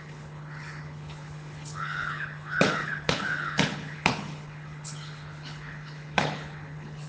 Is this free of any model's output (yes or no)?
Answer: no